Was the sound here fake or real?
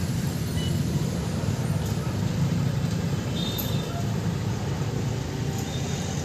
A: real